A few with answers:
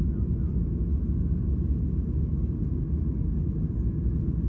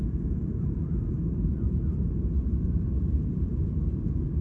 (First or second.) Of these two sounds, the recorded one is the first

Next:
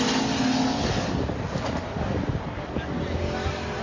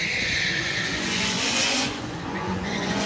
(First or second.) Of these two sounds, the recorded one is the first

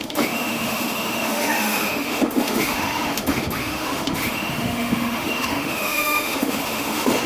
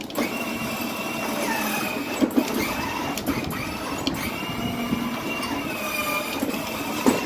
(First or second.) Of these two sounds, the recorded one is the second